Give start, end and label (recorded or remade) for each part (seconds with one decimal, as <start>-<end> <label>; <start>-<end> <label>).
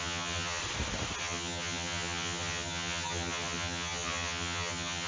0.0-0.6 remade; 0.6-1.2 recorded; 1.2-5.1 remade